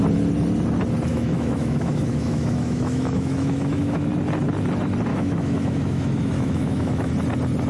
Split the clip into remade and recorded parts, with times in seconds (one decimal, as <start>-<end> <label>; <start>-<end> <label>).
0.0-1.1 recorded; 1.1-4.1 remade; 4.1-5.1 recorded; 5.1-7.1 remade; 7.1-7.7 recorded